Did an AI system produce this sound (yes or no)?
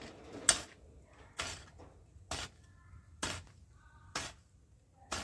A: no